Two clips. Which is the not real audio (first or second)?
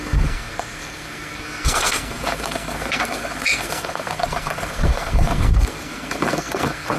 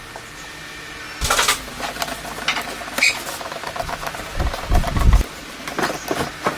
first